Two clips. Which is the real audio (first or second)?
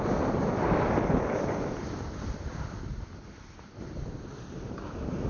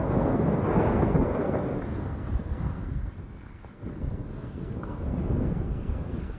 first